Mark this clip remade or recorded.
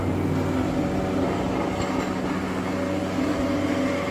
recorded